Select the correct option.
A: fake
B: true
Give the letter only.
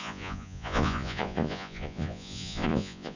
A